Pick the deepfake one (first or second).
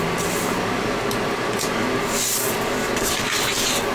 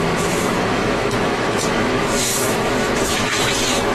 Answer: second